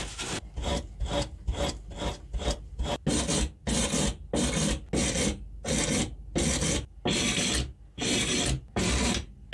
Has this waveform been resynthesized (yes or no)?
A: no